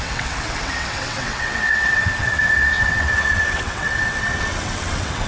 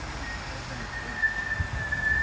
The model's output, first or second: first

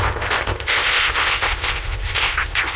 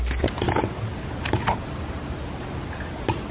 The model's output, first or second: first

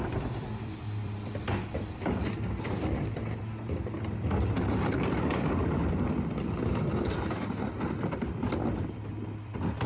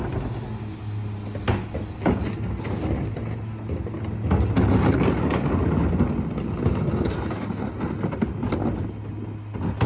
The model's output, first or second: first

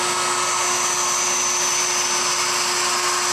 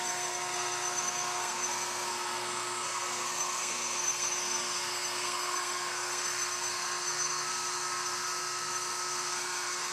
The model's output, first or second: second